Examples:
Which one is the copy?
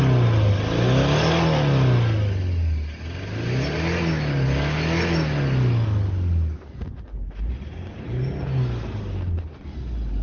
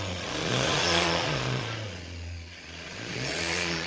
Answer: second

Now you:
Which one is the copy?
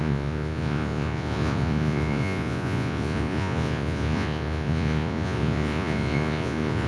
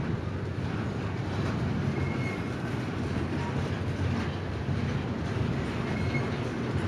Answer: first